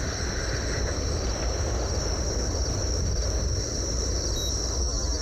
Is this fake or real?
real